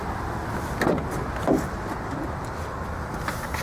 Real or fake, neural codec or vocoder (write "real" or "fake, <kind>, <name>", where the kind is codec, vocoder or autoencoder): real